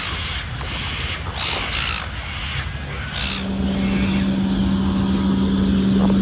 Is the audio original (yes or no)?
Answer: yes